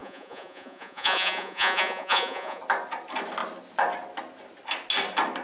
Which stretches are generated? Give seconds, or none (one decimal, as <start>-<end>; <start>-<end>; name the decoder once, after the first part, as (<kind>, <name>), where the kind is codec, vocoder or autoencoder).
0.0-2.6 (vocoder, Vocos)